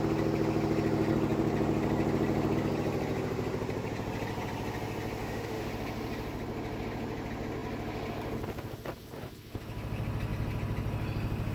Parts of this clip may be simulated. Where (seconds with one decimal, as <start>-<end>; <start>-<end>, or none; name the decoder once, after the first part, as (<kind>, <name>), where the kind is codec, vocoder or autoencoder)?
5.2-5.7 (autoencoder, DAC-VAE)